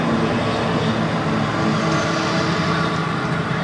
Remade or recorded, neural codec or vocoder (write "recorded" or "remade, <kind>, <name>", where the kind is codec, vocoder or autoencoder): recorded